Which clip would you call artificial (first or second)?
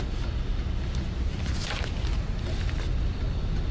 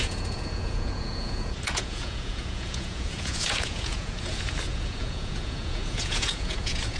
second